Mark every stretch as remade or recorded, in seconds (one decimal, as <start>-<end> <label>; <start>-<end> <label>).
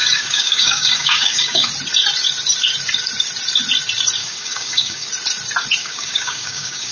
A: 0.0-1.7 remade; 1.7-4.2 recorded; 4.2-5.1 remade; 5.1-5.8 recorded; 5.8-6.9 remade